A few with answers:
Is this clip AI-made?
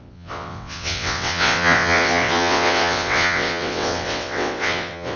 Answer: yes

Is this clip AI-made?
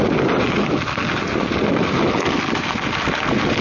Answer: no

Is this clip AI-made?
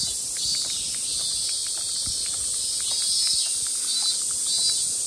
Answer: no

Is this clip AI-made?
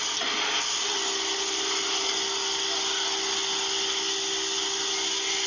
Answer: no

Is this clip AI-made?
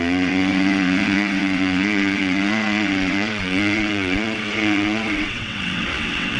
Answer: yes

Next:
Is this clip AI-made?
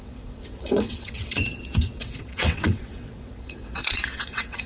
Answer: yes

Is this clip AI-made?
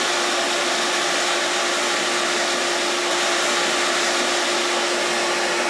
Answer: no